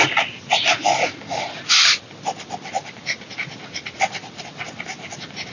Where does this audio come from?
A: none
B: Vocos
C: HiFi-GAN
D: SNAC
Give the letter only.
A